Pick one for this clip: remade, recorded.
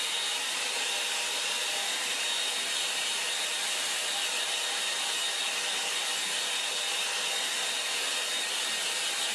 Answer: recorded